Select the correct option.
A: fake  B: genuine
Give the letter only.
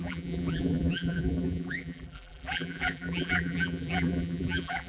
A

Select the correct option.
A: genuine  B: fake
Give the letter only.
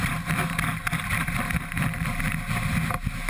A